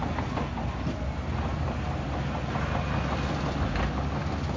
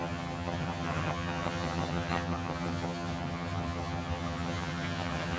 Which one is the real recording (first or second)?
first